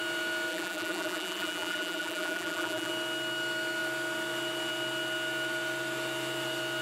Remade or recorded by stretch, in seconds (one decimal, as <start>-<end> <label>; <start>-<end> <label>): 0.0-0.5 recorded; 0.5-2.9 remade; 2.9-6.8 recorded